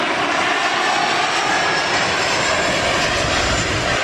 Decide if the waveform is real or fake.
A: real